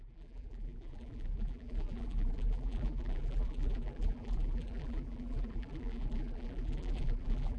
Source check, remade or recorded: remade